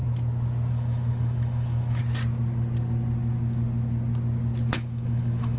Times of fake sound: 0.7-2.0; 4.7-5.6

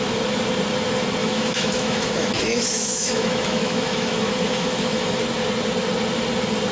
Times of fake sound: 1.2-5.2

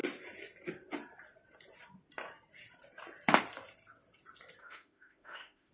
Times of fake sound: 4.6-5.7

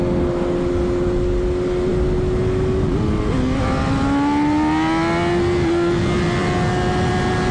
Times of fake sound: none

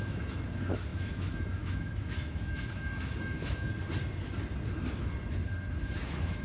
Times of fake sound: 0.0-3.7; 5.8-6.4

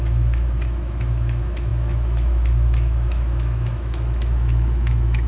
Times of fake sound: 0.0-5.3

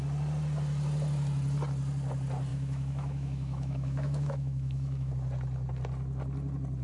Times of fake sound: 2.5-5.1